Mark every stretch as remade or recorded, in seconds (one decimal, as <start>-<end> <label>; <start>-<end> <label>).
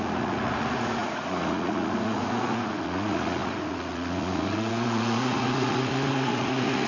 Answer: 0.0-6.9 remade